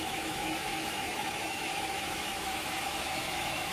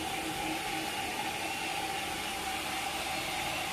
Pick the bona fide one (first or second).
second